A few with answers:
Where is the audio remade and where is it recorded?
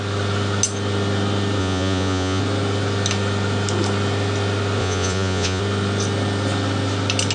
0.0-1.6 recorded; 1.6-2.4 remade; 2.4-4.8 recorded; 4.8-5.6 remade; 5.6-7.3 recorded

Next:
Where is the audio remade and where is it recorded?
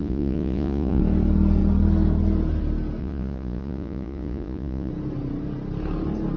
0.0-1.0 remade; 1.0-3.0 recorded; 3.0-4.9 remade; 4.9-6.4 recorded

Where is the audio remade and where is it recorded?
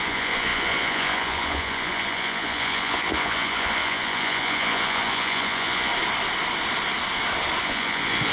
0.0-5.9 remade; 5.9-7.6 recorded; 7.6-8.3 remade